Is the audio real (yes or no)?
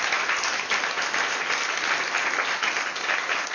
yes